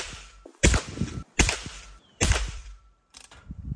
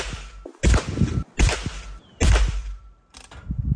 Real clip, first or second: second